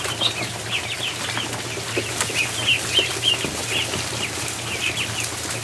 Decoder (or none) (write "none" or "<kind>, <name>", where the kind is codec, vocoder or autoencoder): none